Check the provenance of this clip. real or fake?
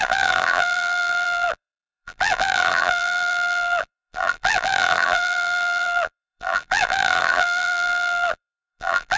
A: fake